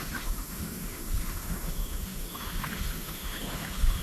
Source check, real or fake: fake